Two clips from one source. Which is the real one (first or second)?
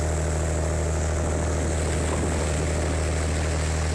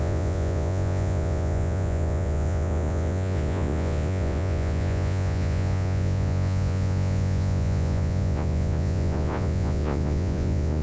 first